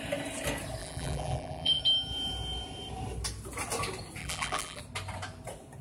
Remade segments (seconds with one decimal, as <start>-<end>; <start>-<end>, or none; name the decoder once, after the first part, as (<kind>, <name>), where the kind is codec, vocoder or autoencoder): 0.8-1.8 (vocoder, BigVGAN v2); 4.2-4.8